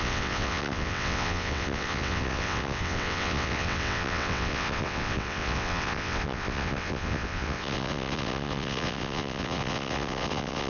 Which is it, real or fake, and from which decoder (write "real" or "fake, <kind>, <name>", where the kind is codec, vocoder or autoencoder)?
fake, vocoder, WaveNeXt